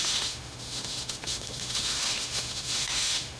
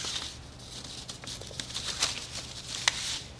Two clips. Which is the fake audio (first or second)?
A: first